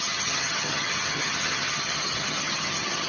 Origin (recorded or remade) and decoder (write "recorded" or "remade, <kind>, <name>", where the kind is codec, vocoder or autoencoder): remade, vocoder, HiFi-GAN